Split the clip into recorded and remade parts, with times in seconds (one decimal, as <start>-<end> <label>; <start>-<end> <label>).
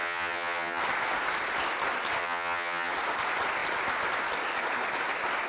0.0-0.8 remade; 0.8-2.2 recorded; 2.2-2.9 remade; 2.9-5.5 recorded